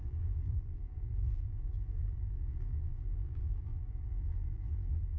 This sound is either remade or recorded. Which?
remade